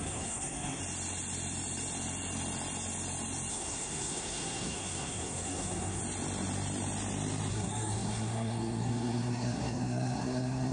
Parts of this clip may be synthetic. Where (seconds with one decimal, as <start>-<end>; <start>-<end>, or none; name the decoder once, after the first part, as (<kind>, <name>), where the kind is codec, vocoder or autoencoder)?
0.0-0.8 (codec, SNAC); 3.5-6.0; 7.5-10.7